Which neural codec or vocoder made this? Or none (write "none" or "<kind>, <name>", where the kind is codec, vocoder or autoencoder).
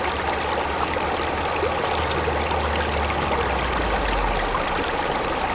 none